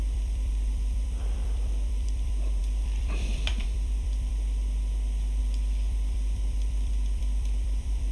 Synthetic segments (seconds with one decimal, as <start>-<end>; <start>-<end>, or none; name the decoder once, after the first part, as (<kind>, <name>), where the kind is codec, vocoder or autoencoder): 0.0-4.3 (vocoder, BigVGAN v2); 5.4-8.1